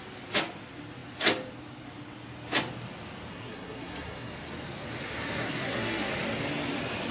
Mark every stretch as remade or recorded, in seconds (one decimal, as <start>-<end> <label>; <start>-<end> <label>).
0.0-3.3 recorded; 3.3-4.3 remade; 4.3-5.4 recorded; 5.4-6.1 remade; 6.1-7.1 recorded